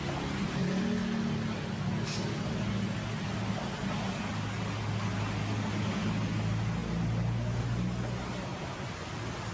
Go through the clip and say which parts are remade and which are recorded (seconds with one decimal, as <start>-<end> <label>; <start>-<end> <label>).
0.0-9.5 recorded